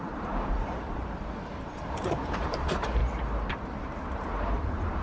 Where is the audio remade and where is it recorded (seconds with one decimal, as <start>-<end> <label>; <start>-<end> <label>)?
0.0-3.0 remade; 3.0-3.5 recorded; 3.5-5.0 remade